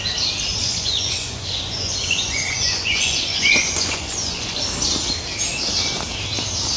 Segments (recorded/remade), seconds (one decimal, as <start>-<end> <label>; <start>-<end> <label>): 0.0-0.5 recorded; 0.5-4.6 remade; 4.6-6.8 recorded